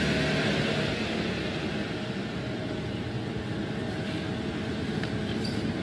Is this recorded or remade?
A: recorded